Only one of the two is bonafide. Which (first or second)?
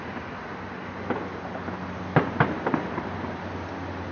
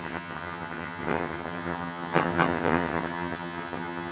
first